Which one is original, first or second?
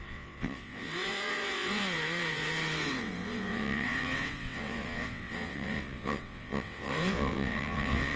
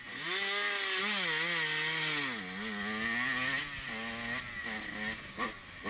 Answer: second